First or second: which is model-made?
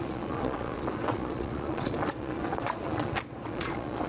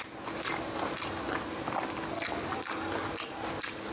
first